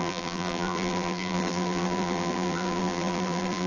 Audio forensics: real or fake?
fake